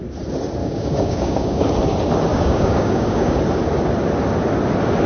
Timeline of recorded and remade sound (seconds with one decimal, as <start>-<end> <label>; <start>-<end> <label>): 0.0-0.6 recorded; 0.6-1.7 remade; 1.7-2.3 recorded; 2.3-3.4 remade; 3.4-5.1 recorded

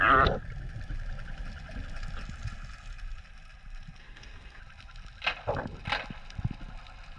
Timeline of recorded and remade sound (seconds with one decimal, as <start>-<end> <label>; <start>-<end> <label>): 0.0-4.0 recorded; 4.0-4.6 remade; 4.6-7.2 recorded

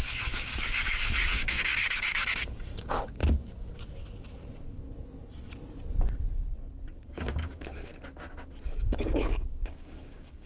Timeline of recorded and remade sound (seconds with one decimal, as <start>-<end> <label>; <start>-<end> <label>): 0.0-3.2 remade; 3.2-7.0 recorded; 7.0-7.9 remade; 7.9-8.8 recorded; 8.8-10.5 remade

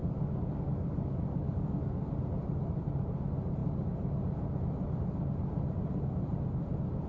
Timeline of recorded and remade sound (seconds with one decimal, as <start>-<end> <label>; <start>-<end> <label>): 0.0-2.2 remade; 2.2-7.1 recorded

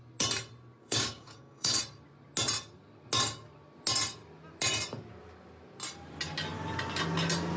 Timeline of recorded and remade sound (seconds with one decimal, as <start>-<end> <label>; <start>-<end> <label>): 0.0-0.8 recorded; 0.8-1.8 remade; 1.8-7.6 recorded

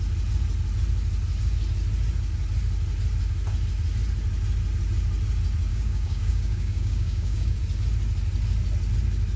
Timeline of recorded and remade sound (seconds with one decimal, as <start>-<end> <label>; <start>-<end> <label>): 0.0-5.7 recorded; 5.7-7.6 remade; 7.6-9.4 recorded

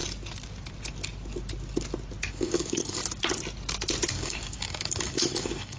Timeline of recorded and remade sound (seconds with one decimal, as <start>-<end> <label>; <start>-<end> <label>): 0.0-2.3 recorded; 2.3-3.0 remade; 3.0-4.1 recorded; 4.1-5.8 remade